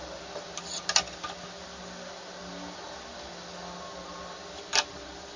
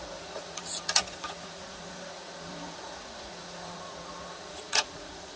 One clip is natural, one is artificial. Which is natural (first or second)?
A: first